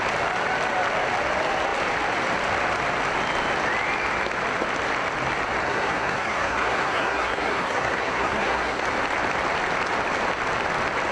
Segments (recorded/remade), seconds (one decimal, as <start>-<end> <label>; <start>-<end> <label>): 0.0-5.6 recorded; 5.6-8.8 remade; 8.8-11.1 recorded